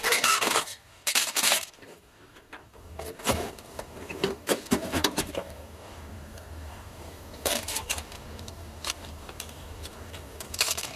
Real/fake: fake